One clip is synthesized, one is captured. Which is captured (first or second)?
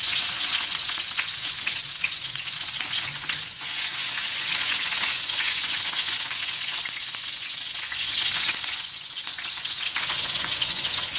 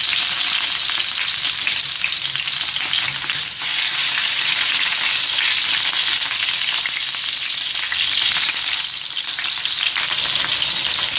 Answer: second